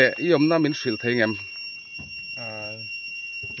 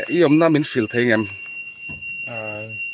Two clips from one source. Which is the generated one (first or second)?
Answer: second